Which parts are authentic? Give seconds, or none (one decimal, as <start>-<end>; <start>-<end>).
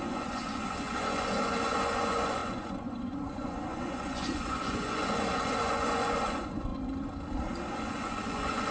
6.7-7.7